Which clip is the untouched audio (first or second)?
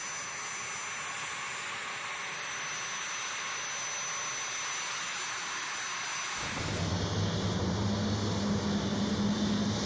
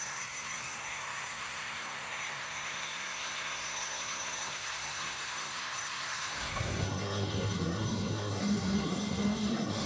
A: first